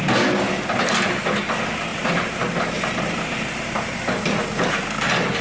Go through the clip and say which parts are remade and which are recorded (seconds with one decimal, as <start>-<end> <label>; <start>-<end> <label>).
0.0-5.4 recorded